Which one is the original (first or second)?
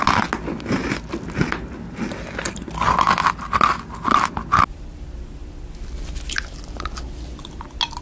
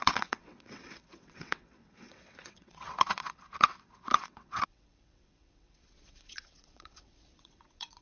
first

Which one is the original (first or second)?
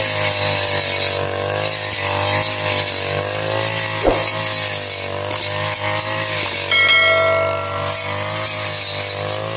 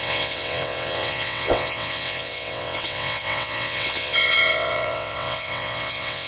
first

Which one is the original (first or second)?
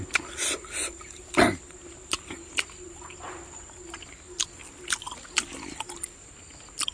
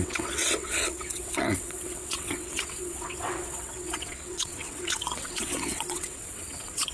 first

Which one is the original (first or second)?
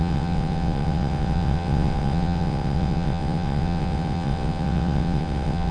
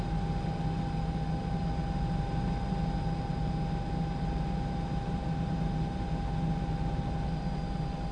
second